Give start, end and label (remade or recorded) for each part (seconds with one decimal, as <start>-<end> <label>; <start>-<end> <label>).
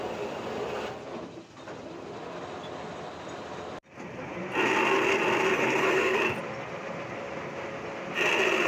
0.0-5.5 recorded; 5.5-6.2 remade; 6.2-8.7 recorded